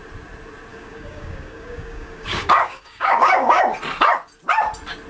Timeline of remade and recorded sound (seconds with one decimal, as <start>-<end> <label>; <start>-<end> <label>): 0.0-0.7 recorded; 0.7-3.6 remade; 3.6-5.1 recorded